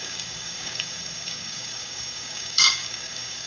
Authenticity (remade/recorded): remade